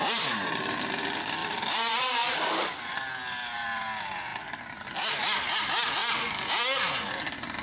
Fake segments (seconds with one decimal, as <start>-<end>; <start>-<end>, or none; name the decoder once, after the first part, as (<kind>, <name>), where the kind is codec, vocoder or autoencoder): 1.4-2.0 (vocoder, BigVGAN v2)